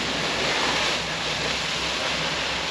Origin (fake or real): real